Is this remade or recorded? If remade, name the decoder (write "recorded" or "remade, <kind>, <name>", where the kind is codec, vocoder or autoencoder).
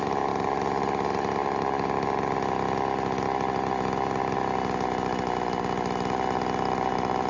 recorded